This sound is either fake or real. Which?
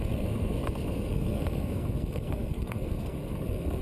fake